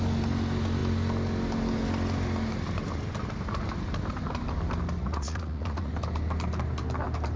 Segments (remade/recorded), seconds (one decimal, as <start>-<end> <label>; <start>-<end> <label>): 0.0-5.0 recorded; 5.0-5.9 remade; 5.9-7.4 recorded